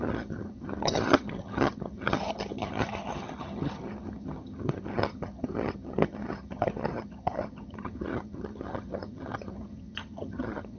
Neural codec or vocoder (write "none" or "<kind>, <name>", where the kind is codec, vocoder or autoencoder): vocoder, HiFi-GAN